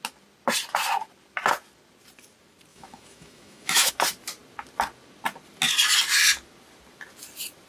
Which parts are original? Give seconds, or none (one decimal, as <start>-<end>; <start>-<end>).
0.0-2.7; 3.9-7.7